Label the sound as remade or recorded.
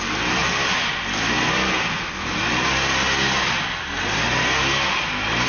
recorded